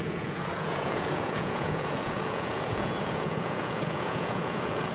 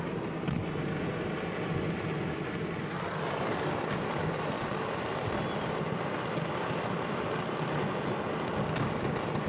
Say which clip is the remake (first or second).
first